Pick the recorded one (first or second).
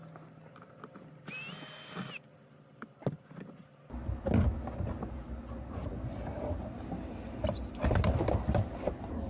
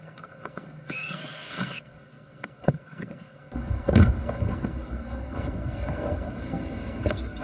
first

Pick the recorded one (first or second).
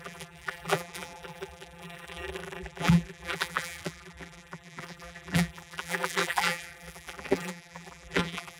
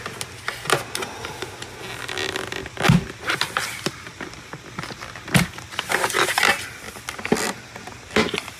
second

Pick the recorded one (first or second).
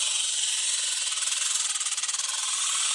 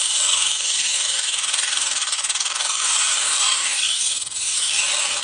first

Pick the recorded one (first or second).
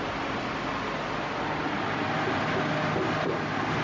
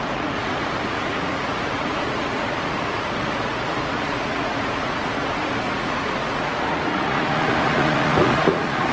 first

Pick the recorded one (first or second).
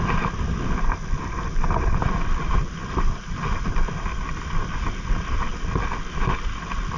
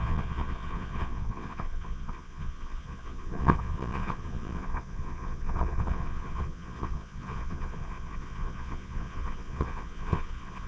first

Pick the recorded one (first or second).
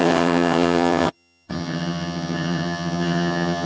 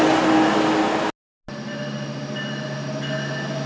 second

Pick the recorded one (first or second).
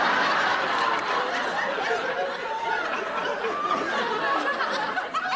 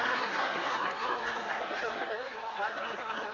first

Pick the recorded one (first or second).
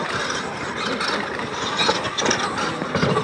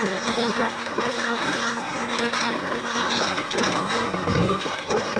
first